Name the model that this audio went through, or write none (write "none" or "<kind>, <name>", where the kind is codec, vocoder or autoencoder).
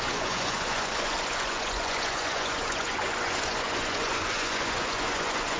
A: vocoder, Vocos